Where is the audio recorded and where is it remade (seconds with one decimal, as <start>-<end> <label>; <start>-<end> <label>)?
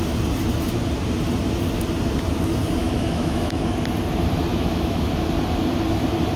0.0-2.8 recorded; 2.8-3.6 remade; 3.6-4.5 recorded; 4.5-5.1 remade; 5.1-6.4 recorded